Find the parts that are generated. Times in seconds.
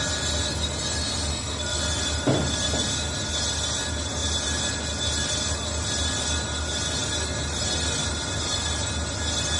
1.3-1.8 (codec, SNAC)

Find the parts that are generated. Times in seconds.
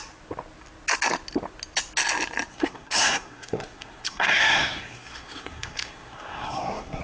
2.5-7.0 (codec, SNAC)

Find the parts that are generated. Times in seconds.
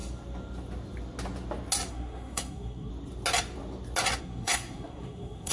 1.9-2.9 (codec, SNAC); 4.2-5.5